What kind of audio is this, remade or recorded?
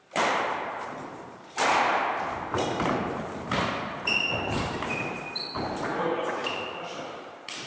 remade